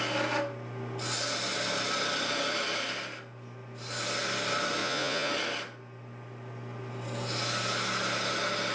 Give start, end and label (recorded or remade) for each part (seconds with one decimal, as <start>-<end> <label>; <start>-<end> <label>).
0.0-4.8 recorded; 4.8-5.3 remade; 5.3-8.7 recorded